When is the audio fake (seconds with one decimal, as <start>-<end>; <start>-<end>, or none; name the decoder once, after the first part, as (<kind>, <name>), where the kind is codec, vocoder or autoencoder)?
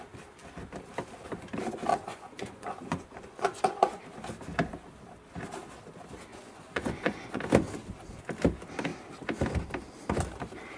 1.9-4.0 (vocoder, Vocos); 6.3-7.4